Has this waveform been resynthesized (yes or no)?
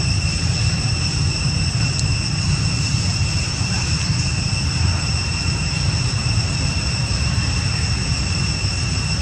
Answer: yes